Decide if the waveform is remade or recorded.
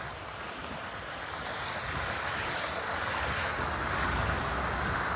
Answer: recorded